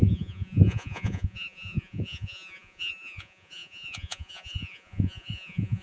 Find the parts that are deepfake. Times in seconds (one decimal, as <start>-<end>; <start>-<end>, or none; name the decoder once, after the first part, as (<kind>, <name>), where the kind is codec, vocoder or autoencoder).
0.0-5.8 (vocoder, Vocos)